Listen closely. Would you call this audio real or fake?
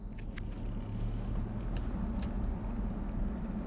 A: real